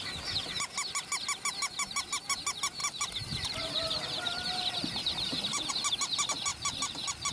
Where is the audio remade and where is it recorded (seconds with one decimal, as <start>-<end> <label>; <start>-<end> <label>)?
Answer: 0.0-2.8 recorded; 2.8-5.7 remade; 5.7-6.5 recorded; 6.5-7.3 remade